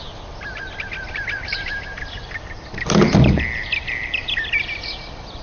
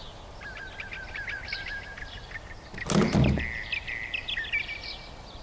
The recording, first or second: second